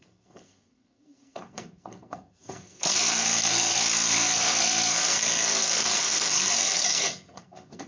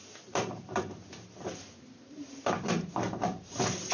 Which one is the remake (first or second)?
first